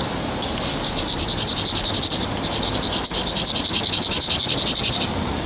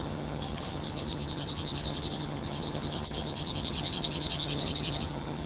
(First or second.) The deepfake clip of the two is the second